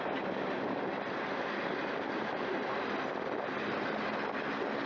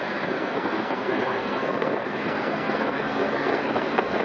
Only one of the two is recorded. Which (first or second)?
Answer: first